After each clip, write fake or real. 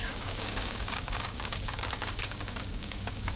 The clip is fake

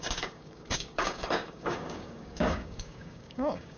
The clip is fake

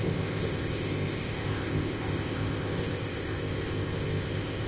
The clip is fake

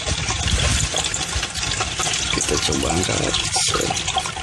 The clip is real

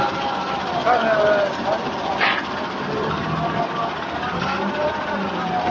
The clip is real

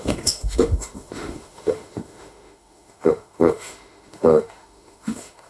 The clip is fake